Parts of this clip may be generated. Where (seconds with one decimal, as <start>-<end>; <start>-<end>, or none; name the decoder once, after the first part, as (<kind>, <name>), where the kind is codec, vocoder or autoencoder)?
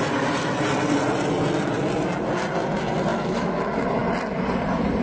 3.1-3.6 (autoencoder, DAC-VAE)